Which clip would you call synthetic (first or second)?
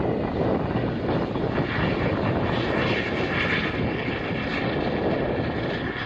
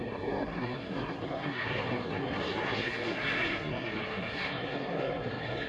second